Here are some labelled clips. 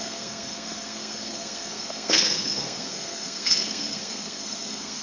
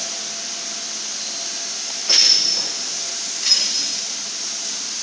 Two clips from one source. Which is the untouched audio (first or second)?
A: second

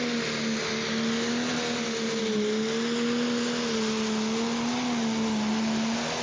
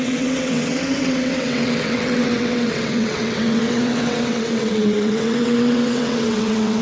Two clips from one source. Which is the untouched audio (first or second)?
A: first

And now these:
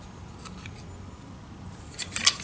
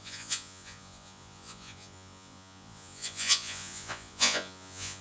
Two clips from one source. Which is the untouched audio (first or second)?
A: first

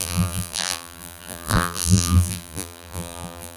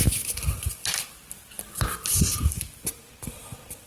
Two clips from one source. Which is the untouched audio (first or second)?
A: second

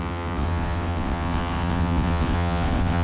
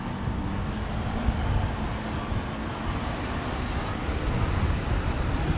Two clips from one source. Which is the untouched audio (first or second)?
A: second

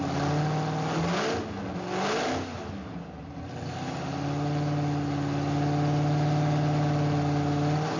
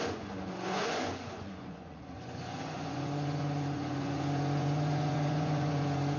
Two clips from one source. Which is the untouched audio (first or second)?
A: first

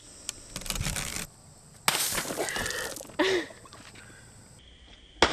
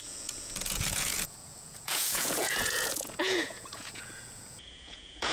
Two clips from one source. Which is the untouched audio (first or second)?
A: first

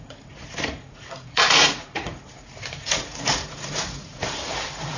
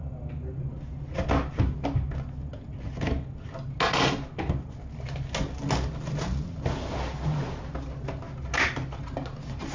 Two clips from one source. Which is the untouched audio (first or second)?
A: second